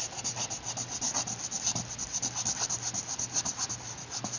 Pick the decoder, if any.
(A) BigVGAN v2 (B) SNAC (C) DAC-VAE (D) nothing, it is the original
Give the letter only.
A